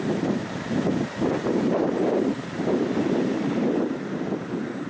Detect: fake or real fake